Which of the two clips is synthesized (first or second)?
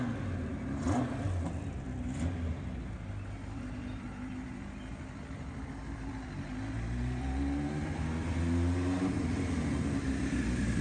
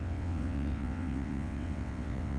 second